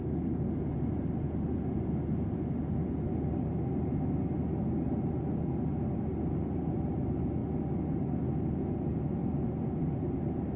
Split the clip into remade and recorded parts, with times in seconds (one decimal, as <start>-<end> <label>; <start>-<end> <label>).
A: 0.0-10.6 recorded